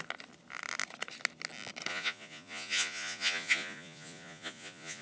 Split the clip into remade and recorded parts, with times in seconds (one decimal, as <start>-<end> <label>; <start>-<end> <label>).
0.0-1.9 recorded; 1.9-5.0 remade